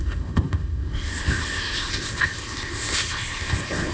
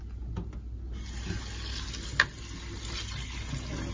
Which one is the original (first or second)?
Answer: second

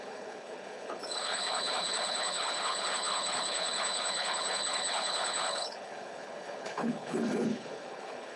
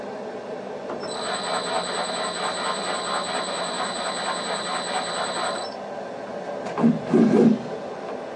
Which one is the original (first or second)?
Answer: second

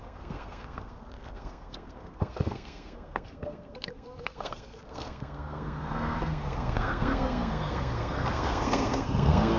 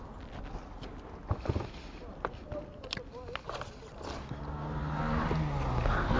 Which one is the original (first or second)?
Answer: second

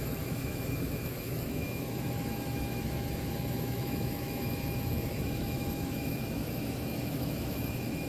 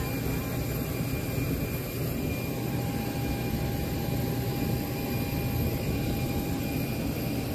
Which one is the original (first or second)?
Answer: second